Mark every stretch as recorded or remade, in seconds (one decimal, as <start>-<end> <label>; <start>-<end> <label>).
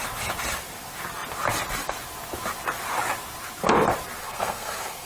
0.0-4.2 recorded; 4.2-5.1 remade